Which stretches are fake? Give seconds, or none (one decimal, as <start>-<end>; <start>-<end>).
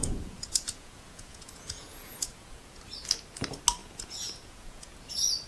0.0-2.8; 3.8-4.9